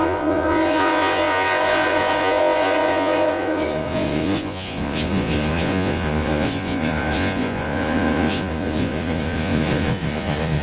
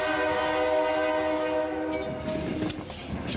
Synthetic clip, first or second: first